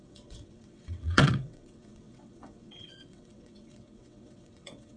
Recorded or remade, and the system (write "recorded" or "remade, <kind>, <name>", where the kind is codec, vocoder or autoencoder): remade, vocoder, WaveNeXt